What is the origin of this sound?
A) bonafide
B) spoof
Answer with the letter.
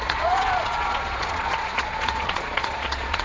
B